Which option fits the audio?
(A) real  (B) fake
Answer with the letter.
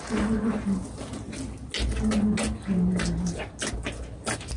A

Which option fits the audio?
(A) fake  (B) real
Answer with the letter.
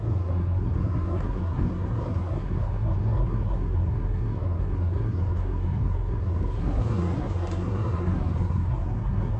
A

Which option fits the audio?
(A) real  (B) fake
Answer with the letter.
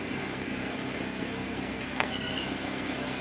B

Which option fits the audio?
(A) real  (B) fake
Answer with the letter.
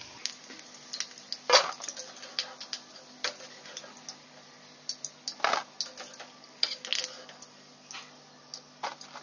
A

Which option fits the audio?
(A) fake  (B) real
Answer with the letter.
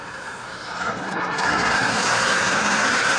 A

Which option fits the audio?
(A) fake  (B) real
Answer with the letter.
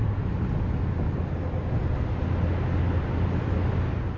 B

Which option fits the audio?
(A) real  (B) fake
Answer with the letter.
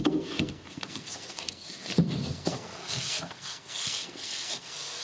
B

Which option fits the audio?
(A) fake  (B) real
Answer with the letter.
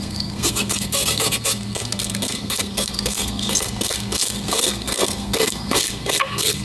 A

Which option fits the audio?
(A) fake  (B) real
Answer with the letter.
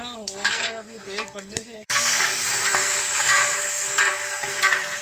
A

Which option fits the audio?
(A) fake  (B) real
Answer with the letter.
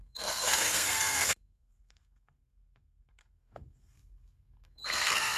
A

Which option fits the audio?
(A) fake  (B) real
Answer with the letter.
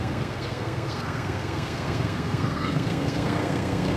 A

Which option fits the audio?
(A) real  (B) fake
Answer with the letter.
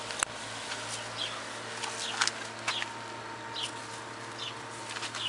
A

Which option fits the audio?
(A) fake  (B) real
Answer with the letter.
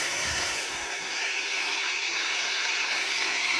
A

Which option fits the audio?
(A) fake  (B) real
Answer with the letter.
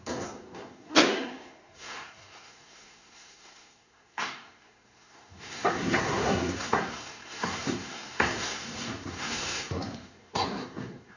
A